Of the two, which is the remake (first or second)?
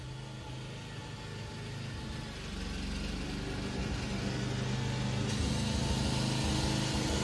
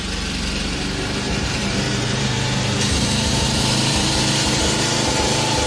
second